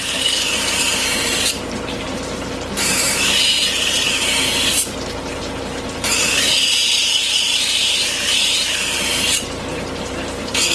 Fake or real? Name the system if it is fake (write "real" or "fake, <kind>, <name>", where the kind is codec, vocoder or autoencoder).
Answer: fake, vocoder, BigVGAN v2